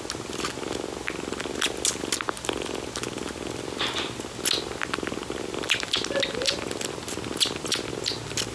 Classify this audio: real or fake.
real